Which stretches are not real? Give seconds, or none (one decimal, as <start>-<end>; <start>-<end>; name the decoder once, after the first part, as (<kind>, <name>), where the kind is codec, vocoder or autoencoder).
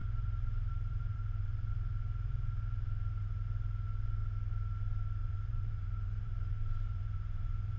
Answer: 0.0-1.7 (vocoder, BigVGAN v2); 5.2-7.8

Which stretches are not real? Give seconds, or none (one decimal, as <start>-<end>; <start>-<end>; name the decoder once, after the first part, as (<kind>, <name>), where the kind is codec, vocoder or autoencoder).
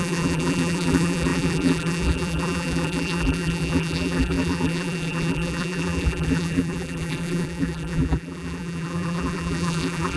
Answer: 0.0-10.2 (vocoder, BigVGAN v2)